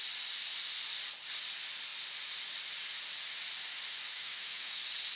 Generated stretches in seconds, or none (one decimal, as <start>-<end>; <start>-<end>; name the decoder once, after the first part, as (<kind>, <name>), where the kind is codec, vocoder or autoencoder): 4.1-4.8 (autoencoder, DAC-VAE)